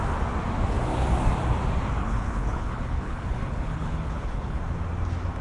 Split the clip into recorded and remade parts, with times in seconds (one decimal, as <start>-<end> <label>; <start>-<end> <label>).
0.0-2.0 recorded; 2.0-4.6 remade; 4.6-5.4 recorded